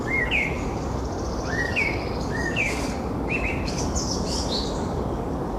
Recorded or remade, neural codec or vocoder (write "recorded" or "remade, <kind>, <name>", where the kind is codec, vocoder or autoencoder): remade, codec, DAC